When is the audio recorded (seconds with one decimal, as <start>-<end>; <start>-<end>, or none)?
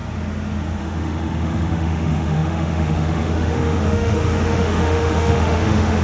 0.0-0.8